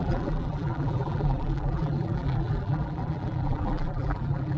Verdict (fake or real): fake